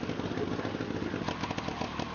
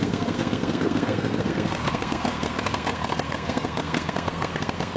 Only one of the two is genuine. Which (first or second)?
first